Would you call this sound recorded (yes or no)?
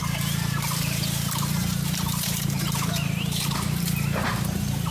no